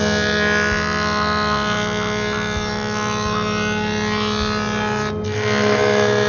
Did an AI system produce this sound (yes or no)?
no